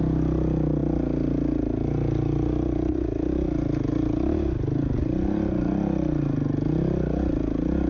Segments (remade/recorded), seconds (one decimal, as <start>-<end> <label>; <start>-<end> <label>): 0.0-7.9 recorded